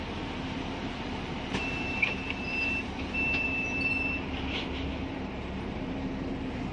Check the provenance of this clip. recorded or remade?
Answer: remade